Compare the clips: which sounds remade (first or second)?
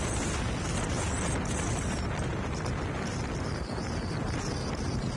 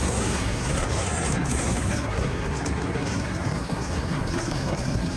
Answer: second